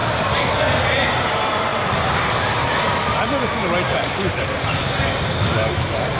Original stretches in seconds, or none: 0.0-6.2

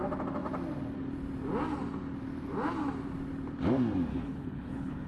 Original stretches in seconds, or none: 0.0-4.1

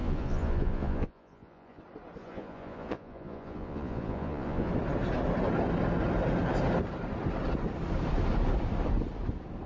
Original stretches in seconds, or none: 1.8-2.2; 4.7-9.7

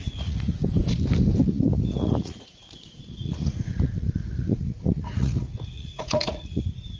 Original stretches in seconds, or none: 0.6-1.4

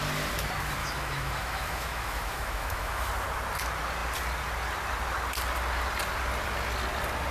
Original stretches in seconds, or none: 0.0-0.8; 3.1-7.3

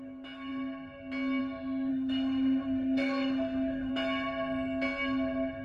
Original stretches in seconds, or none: 0.0-1.9; 3.9-5.6

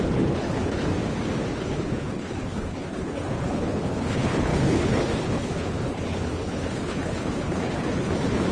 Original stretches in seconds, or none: 0.9-1.6

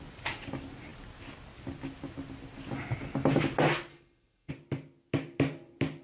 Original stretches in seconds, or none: 0.0-3.9; 4.5-6.0